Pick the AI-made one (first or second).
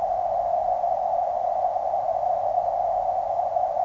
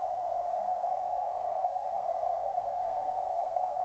second